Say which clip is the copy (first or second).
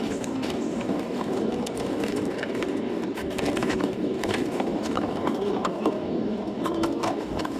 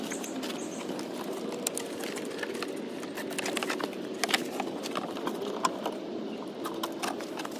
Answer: first